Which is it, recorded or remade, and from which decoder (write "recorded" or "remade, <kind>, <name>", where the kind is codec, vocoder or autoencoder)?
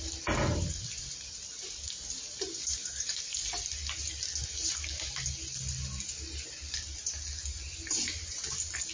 recorded